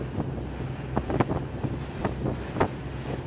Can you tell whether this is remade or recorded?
recorded